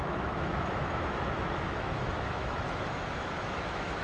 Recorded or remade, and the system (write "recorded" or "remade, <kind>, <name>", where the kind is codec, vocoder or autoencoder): remade, autoencoder, DAC-VAE